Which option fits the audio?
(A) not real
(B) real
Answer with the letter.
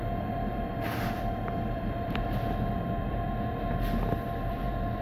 A